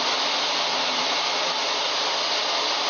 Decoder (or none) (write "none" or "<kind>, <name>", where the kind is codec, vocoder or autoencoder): none